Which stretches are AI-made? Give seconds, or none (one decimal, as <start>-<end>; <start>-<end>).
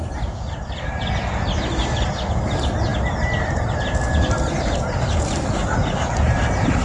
none